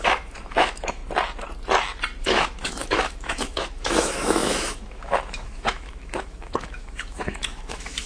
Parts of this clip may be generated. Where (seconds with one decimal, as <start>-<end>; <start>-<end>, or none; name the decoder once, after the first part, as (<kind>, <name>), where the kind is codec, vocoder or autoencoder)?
0.0-1.0 (autoencoder, DAC-VAE); 2.2-8.1